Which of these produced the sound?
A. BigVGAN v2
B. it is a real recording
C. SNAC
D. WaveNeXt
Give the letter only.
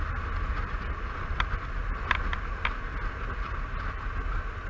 B